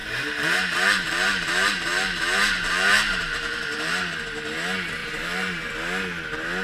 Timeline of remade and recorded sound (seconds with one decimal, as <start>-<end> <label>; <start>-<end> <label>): 0.0-3.9 remade; 3.9-5.0 recorded; 5.0-5.7 remade; 5.7-6.6 recorded